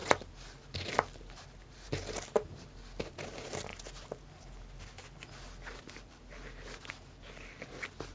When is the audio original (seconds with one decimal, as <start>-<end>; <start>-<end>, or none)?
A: 0.0-8.1